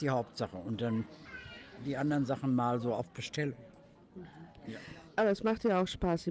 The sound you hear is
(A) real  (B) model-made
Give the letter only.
A